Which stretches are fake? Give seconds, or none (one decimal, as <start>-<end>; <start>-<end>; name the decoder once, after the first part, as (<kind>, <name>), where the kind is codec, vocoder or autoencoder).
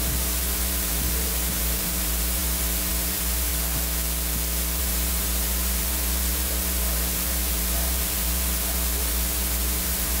0.0-3.5 (vocoder, BigVGAN v2); 4.8-10.2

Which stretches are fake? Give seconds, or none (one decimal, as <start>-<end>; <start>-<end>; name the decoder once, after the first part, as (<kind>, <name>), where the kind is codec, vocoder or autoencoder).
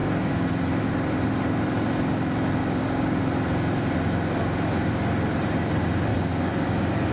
0.0-0.5 (codec, DAC); 2.6-3.2; 6.1-7.1